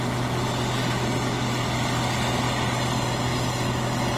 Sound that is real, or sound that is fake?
real